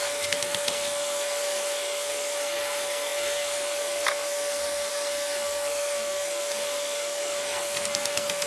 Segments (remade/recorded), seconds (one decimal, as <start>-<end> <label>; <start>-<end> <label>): 0.0-8.5 remade